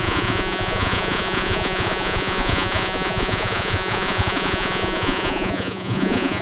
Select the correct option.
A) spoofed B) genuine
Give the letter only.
A